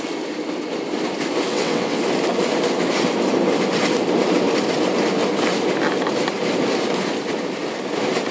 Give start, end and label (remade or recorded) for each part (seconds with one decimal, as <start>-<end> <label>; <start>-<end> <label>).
0.0-1.5 recorded; 1.5-2.0 remade; 2.0-8.3 recorded